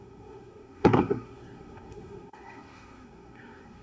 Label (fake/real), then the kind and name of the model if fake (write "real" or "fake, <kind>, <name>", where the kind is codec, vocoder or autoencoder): fake, codec, SNAC